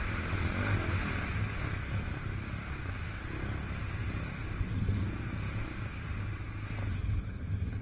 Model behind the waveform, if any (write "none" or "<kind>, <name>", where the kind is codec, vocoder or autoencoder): none